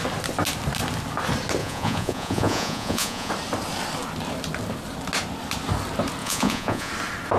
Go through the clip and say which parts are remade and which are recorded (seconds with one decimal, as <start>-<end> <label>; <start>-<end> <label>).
0.0-1.6 recorded; 1.6-3.3 remade; 3.3-6.2 recorded; 6.2-6.9 remade; 6.9-7.4 recorded